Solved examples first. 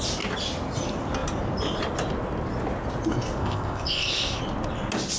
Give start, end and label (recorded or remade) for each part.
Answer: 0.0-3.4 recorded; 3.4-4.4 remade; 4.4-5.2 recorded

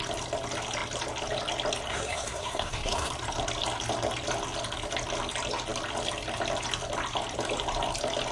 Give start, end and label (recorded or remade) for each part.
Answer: 0.0-1.9 recorded; 1.9-3.1 remade; 3.1-8.3 recorded

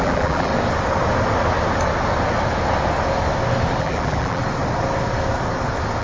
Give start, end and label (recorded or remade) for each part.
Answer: 0.0-0.5 remade; 0.5-3.8 recorded; 3.8-4.4 remade; 4.4-6.0 recorded

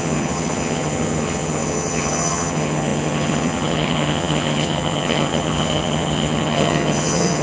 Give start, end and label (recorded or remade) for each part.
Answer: 0.0-7.4 remade